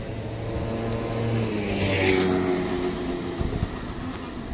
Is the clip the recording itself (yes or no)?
yes